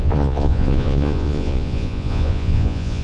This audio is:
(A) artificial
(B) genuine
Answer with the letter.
A